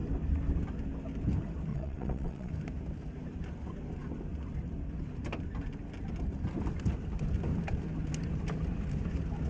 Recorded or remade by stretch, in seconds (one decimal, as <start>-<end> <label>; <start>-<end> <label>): 0.0-1.7 recorded; 1.7-2.5 remade; 2.5-9.5 recorded